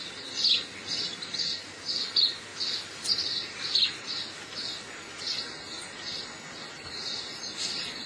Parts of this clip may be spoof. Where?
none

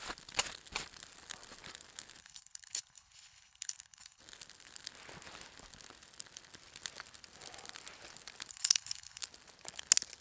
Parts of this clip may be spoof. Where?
2.2-4.2 (codec, HILCodec); 8.5-9.2

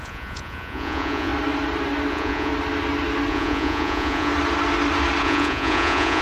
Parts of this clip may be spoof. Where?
0.0-1.3 (vocoder, Vocos); 2.1-2.5; 3.3-4.3; 5.2-6.2

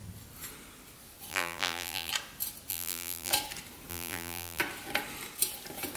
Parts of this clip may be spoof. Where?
1.3-2.1 (vocoder, BigVGAN v2); 2.7-3.3; 3.9-4.6

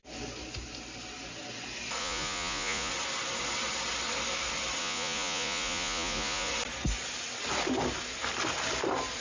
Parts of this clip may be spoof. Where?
2.0-2.9 (vocoder, Vocos); 4.8-6.5